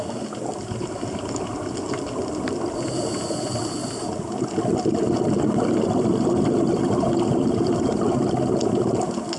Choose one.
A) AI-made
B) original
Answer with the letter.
B